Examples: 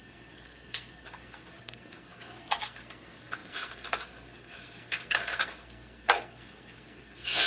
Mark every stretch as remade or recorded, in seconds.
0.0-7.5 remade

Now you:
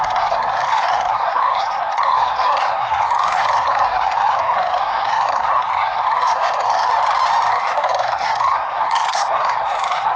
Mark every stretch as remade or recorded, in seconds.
0.0-6.9 remade; 6.9-7.5 recorded; 7.5-10.2 remade

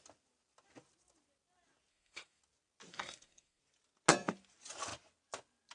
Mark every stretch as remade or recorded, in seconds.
0.0-1.9 recorded; 1.9-2.4 remade; 2.4-2.9 recorded; 2.9-3.6 remade; 3.6-5.7 recorded